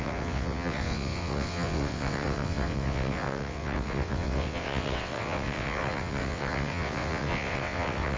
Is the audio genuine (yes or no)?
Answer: no